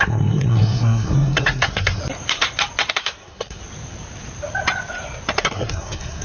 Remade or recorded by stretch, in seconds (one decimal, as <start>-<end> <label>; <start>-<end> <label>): 0.0-2.0 remade; 2.0-2.9 recorded; 2.9-3.6 remade; 3.6-5.4 recorded; 5.4-6.2 remade